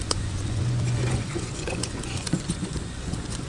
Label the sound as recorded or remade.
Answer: remade